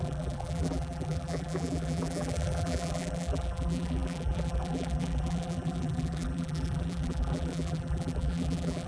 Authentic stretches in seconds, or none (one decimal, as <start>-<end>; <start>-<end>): none